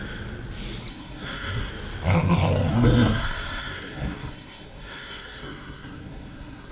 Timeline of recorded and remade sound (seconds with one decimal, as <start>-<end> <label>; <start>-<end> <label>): 0.0-0.9 recorded; 0.9-1.7 remade; 1.7-2.7 recorded; 2.7-6.7 remade